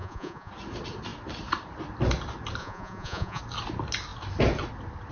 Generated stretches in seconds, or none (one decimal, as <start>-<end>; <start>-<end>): 0.0-0.5; 2.6-3.4